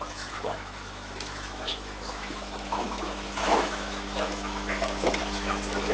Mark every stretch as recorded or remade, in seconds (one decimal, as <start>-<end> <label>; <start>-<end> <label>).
0.0-5.9 remade